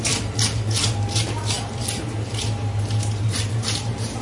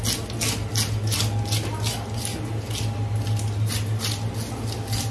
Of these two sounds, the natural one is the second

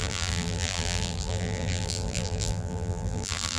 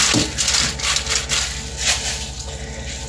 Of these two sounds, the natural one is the second